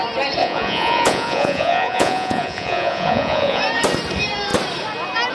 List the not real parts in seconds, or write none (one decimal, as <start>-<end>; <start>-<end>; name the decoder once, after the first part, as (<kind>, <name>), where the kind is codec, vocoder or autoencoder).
0.4-3.6 (vocoder, Vocos)